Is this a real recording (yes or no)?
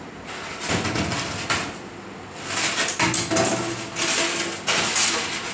yes